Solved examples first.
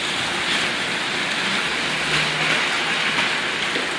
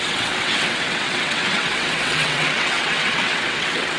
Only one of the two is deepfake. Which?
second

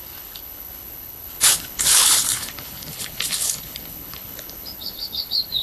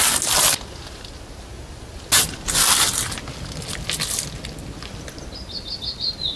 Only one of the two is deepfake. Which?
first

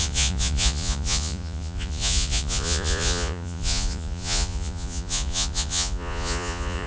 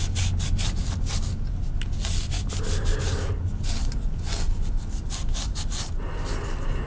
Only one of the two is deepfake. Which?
first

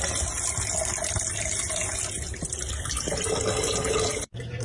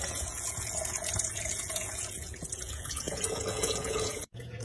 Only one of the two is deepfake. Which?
second